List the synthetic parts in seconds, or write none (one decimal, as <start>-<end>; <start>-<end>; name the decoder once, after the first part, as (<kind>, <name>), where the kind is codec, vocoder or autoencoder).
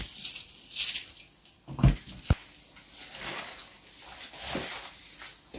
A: none